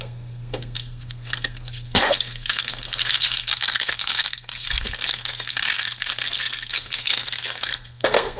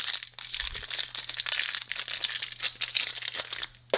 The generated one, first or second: first